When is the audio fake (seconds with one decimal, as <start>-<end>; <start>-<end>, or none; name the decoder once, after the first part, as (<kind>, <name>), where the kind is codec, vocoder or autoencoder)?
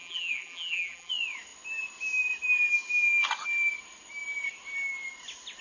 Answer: 0.0-1.1 (vocoder, BigVGAN v2)